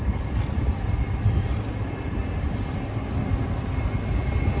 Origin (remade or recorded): recorded